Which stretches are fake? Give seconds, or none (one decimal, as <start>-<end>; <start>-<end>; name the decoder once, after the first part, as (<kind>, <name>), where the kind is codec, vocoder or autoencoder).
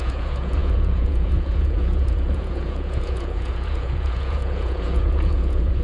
0.0-5.8 (vocoder, Vocos)